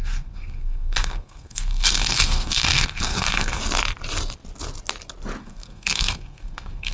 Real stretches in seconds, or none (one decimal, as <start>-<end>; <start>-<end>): 3.6-5.4